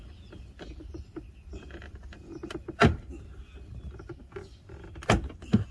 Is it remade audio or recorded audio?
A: recorded